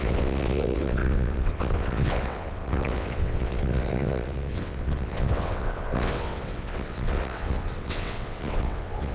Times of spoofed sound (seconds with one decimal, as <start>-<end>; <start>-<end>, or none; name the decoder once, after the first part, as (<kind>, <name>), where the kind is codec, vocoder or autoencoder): 0.0-9.1 (vocoder, WaveNeXt)